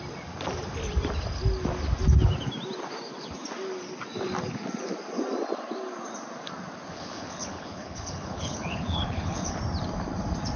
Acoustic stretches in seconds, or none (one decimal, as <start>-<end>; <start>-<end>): 0.0-6.9; 9.6-10.6